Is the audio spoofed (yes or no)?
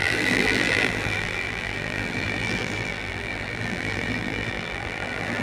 yes